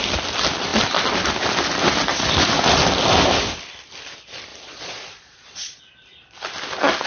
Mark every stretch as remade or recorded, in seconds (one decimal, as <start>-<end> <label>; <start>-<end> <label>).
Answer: 0.0-4.5 recorded; 4.5-5.8 remade; 5.8-7.1 recorded